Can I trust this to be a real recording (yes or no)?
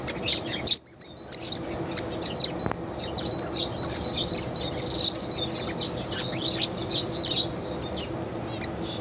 yes